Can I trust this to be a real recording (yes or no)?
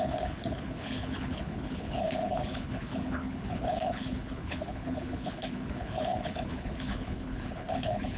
no